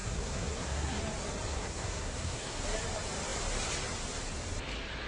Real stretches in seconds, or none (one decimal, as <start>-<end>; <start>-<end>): 1.0-1.5; 2.6-5.1